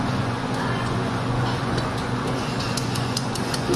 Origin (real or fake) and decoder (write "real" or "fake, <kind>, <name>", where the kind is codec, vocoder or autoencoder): fake, vocoder, Vocos